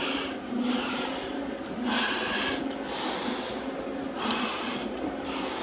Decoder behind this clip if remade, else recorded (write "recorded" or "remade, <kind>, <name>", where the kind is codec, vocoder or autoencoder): recorded